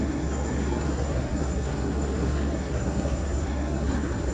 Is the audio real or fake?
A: fake